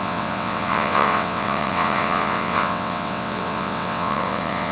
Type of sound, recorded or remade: remade